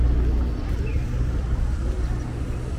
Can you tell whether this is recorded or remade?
recorded